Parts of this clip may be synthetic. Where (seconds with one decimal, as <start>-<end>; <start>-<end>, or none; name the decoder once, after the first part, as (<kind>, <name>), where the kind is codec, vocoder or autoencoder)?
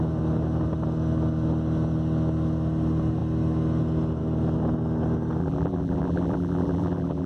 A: 5.4-7.3 (vocoder, BigVGAN v2)